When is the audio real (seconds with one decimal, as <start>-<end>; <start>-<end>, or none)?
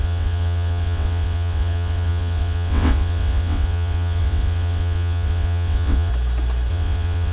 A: 6.1-6.7